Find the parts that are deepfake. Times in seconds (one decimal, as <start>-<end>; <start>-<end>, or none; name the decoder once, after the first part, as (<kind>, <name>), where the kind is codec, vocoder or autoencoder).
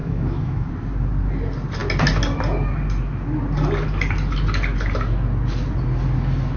0.0-0.7 (autoencoder, DAC-VAE)